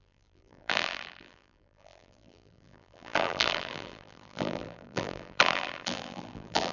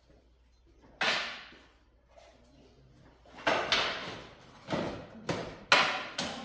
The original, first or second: second